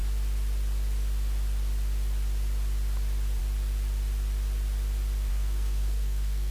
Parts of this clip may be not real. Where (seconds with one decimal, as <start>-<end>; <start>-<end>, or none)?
5.3-6.5